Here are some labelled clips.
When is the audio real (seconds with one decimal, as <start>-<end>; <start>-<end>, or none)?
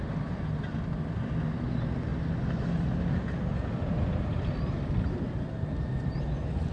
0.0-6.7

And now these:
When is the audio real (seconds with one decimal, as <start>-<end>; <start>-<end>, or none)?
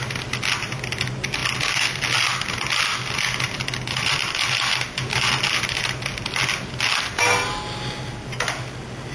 0.0-9.1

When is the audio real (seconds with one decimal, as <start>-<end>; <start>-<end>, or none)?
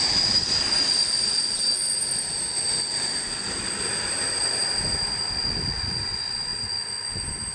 0.0-7.5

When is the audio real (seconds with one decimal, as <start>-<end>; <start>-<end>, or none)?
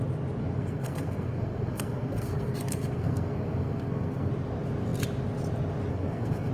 0.0-0.4; 4.3-5.9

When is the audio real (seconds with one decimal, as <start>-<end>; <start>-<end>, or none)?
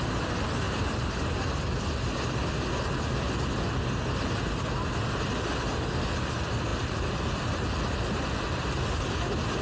0.0-9.6